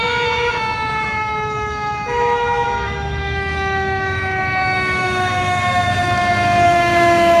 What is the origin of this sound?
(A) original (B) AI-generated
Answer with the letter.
B